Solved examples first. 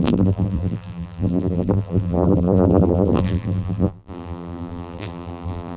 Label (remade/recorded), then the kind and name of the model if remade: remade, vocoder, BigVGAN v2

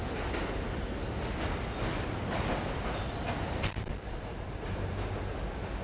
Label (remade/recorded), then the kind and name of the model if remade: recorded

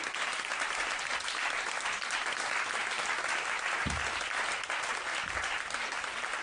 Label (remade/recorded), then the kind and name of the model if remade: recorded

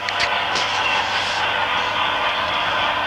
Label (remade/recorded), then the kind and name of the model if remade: remade, vocoder, BigVGAN v2